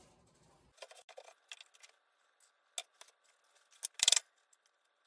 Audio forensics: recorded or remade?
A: recorded